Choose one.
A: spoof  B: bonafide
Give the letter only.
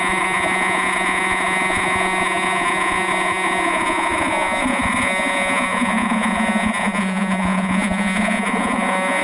A